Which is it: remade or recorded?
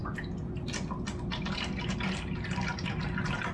recorded